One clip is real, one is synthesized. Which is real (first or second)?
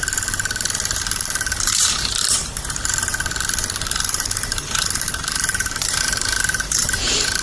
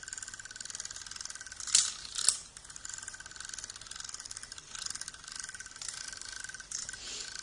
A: second